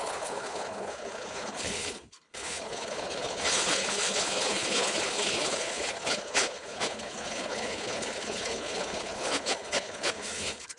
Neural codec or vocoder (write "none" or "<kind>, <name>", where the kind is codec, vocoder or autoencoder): codec, HILCodec